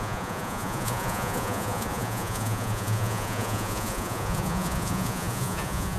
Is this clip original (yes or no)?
no